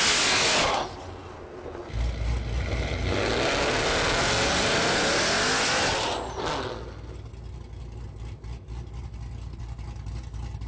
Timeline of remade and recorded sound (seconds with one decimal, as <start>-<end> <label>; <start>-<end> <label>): 0.0-10.7 recorded

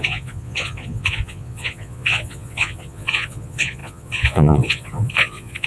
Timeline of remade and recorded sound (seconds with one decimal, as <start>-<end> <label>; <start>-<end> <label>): 0.0-5.7 remade

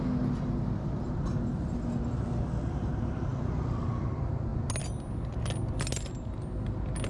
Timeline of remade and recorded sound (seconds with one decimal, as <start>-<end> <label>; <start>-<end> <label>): 0.0-7.1 recorded

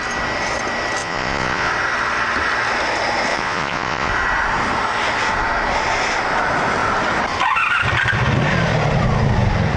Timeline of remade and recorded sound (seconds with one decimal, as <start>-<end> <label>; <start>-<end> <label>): 0.0-1.0 recorded; 1.0-1.7 remade; 1.7-3.3 recorded; 3.3-4.1 remade; 4.1-9.8 recorded

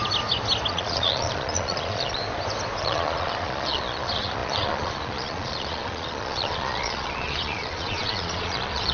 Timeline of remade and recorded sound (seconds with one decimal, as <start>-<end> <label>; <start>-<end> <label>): 0.0-0.7 recorded; 0.7-2.2 remade; 2.2-2.8 recorded; 2.8-8.9 remade

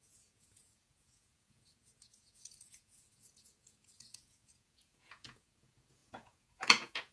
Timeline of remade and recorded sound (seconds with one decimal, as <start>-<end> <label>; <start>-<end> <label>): 0.0-7.1 remade

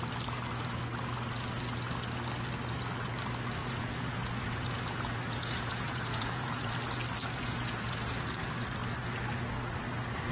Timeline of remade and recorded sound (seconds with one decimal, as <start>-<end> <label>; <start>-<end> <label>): 0.0-3.6 recorded; 3.6-6.7 remade; 6.7-7.2 recorded; 7.2-8.1 remade; 8.1-10.3 recorded

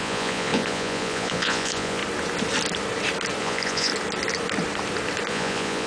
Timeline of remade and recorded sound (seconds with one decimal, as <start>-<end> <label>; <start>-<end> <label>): 0.0-2.0 remade; 2.0-3.4 recorded; 3.4-3.9 remade; 3.9-5.3 recorded; 5.3-5.9 remade